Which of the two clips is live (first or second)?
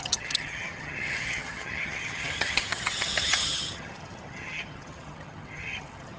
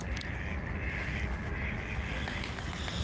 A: second